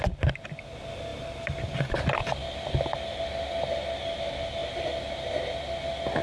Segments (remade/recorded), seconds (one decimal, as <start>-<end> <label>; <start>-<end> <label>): 0.0-6.2 recorded

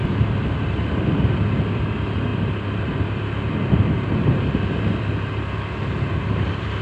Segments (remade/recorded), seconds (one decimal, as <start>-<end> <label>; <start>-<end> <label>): 0.0-6.8 recorded

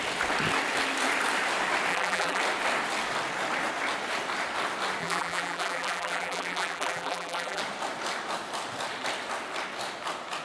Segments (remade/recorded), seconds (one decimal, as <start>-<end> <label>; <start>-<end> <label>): 0.0-1.9 recorded; 1.9-2.4 remade; 2.4-5.0 recorded; 5.0-7.6 remade; 7.6-10.4 recorded

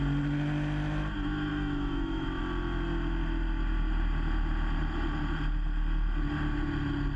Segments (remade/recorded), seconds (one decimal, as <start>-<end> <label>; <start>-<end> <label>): 0.0-1.5 recorded; 1.5-2.4 remade; 2.4-7.2 recorded